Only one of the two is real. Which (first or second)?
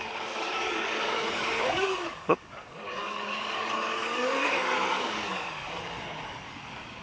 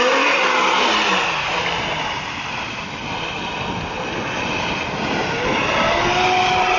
second